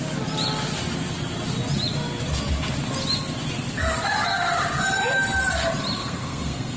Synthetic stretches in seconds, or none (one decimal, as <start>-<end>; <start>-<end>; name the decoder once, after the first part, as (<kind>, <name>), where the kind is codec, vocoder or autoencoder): 6.0-6.8 (codec, SNAC)